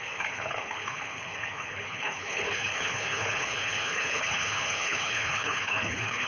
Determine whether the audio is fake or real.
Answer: fake